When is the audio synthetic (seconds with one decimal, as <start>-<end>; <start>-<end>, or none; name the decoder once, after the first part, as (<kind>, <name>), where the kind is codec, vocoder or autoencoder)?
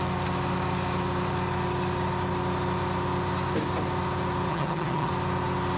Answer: 4.5-5.1 (vocoder, HiFi-GAN)